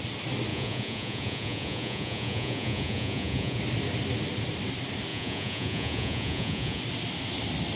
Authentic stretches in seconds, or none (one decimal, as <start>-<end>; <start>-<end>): 0.0-0.5; 3.6-5.1; 6.8-7.8